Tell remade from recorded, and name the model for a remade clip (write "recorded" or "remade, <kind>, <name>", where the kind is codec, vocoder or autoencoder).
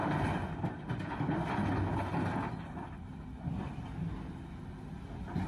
recorded